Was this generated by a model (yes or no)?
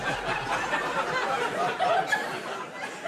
no